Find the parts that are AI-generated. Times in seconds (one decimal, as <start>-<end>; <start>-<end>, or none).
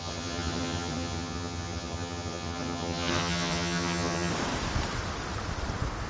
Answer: 0.0-4.3